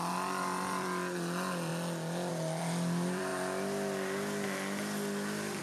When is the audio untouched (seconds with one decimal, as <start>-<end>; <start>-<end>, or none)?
1.7-2.3; 3.3-5.6